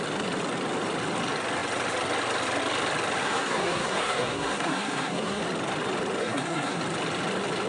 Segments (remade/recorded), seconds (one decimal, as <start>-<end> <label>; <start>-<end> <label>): 0.0-3.2 recorded; 3.2-5.4 remade; 5.4-6.2 recorded; 6.2-6.8 remade; 6.8-7.7 recorded